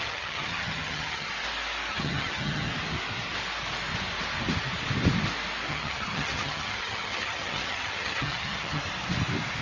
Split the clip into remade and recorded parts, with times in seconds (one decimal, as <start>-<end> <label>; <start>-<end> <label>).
0.0-1.3 remade; 1.3-1.9 recorded; 1.9-2.7 remade; 2.7-5.7 recorded; 5.7-8.8 remade; 8.8-9.6 recorded